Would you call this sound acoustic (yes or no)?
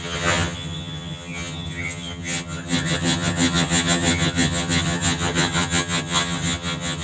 no